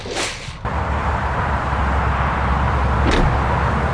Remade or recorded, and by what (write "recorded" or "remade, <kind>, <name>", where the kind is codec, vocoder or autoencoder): recorded